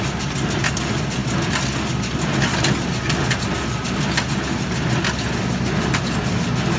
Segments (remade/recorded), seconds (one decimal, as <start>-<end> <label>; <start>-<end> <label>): 0.0-6.8 recorded